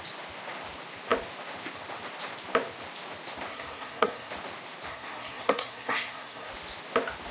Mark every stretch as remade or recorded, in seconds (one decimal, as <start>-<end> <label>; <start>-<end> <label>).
0.0-3.5 recorded; 3.5-4.3 remade; 4.3-4.9 recorded; 4.9-6.5 remade; 6.5-7.3 recorded